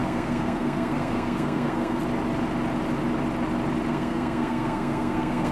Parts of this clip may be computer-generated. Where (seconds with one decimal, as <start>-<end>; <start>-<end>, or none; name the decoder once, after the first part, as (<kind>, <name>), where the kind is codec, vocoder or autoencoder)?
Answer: 0.0-2.0 (codec, SNAC); 3.9-5.5